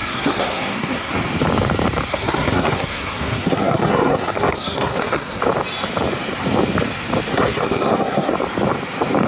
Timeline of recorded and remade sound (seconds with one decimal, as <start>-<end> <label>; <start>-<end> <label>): 0.0-1.1 remade; 1.1-2.1 recorded; 2.1-5.4 remade; 5.4-7.3 recorded; 7.3-8.3 remade; 8.3-9.3 recorded